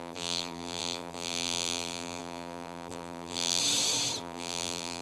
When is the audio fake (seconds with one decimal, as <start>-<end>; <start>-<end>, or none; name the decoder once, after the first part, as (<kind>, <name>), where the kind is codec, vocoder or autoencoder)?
0.0-3.6 (vocoder, BigVGAN v2); 4.2-5.0